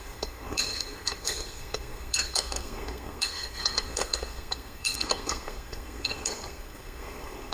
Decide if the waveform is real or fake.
fake